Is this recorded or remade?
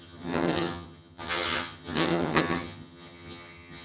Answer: remade